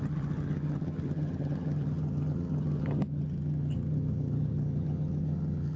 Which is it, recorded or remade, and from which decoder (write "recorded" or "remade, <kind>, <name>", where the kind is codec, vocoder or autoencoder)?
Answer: remade, vocoder, HiFi-GAN